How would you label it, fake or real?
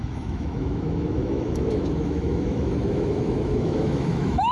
fake